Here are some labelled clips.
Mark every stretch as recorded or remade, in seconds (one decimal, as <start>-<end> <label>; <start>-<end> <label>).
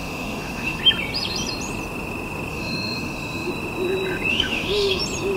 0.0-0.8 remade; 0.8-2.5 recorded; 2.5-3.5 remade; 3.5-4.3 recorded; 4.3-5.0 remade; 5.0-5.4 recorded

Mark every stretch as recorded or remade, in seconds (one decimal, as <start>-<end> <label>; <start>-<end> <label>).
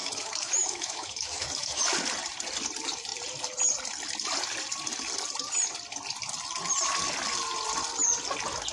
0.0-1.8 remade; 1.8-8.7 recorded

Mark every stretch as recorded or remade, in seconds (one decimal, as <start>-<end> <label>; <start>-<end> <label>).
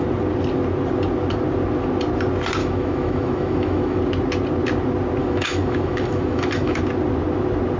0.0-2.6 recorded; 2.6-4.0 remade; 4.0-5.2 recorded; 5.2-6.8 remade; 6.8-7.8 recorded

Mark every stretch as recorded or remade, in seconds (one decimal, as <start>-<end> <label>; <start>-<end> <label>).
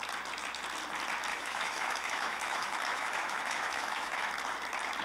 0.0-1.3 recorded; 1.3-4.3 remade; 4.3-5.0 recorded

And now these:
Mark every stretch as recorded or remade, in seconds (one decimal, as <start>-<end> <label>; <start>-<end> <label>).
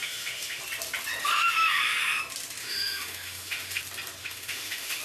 0.0-0.6 remade; 0.6-1.2 recorded; 1.2-2.2 remade; 2.2-2.6 recorded; 2.6-3.8 remade; 3.8-4.2 recorded; 4.2-5.0 remade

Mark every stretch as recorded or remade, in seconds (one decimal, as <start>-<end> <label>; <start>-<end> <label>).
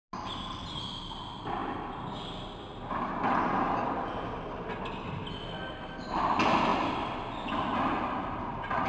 0.0-8.9 recorded